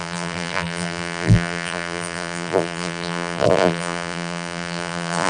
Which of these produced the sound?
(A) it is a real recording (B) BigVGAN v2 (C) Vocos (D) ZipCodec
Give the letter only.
B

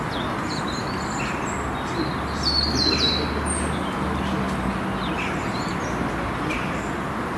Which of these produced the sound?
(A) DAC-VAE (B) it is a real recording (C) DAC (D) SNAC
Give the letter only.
B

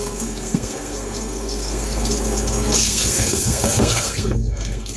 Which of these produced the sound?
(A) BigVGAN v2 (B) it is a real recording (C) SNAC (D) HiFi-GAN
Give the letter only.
C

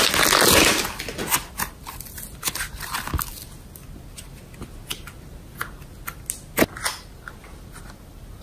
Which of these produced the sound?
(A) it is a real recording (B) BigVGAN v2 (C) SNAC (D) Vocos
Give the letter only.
A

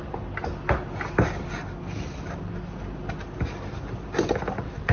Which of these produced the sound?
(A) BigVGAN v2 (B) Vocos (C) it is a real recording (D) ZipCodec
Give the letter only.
C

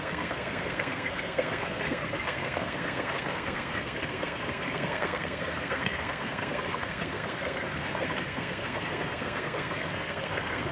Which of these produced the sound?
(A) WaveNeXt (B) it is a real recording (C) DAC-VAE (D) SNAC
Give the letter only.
D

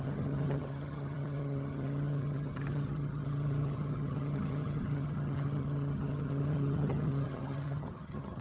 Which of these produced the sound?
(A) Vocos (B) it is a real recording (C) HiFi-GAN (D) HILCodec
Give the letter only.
C